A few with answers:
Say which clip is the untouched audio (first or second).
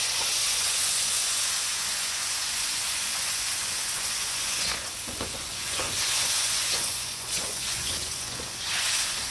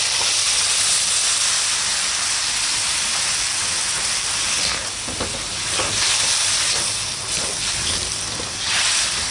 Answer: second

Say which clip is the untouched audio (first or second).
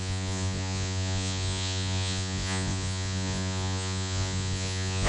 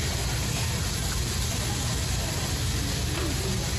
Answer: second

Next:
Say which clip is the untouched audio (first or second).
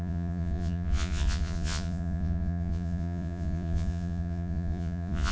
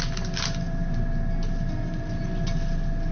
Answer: second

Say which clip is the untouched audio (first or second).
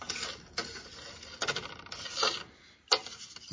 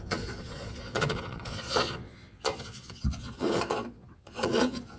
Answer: first